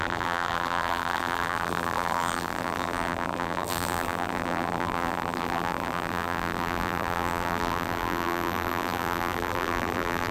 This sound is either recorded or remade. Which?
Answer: remade